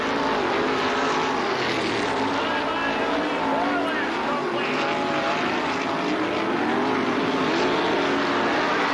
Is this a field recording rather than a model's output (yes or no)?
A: yes